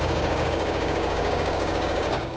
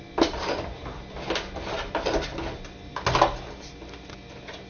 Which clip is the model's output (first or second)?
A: first